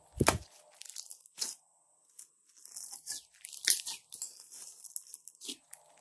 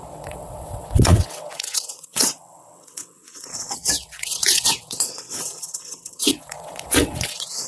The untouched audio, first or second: first